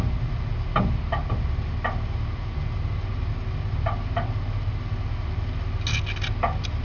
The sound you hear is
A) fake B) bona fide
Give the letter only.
B